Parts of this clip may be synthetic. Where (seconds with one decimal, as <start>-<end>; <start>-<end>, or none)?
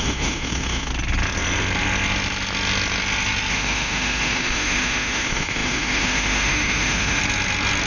0.0-0.9; 3.5-7.2